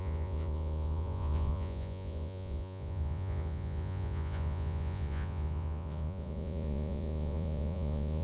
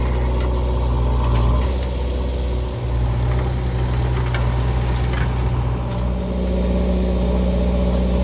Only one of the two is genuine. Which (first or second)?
second